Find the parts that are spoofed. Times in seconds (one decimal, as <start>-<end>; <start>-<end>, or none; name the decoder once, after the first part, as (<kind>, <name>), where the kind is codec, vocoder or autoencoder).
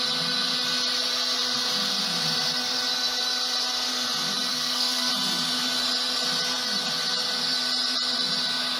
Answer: 4.5-5.1 (codec, SNAC)